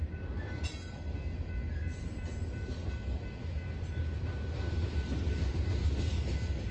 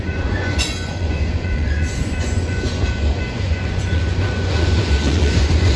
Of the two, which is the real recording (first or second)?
first